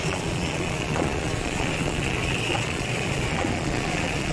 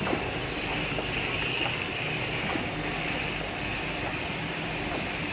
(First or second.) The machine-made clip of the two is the first